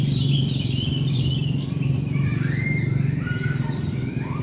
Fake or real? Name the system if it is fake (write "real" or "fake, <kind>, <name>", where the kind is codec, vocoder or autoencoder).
fake, vocoder, BigVGAN v2